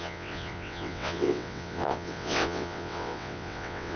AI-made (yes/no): yes